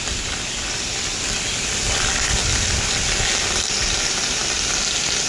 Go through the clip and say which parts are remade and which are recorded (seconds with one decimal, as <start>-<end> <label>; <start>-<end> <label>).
0.0-5.3 recorded